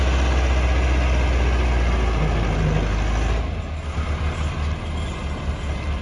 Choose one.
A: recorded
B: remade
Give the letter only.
A